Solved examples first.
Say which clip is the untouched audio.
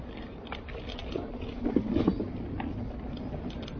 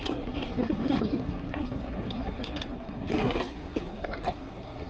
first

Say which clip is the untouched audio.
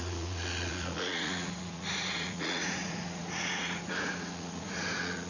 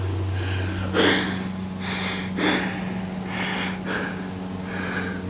second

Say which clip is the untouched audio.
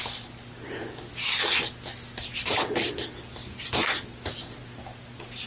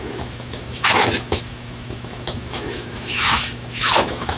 first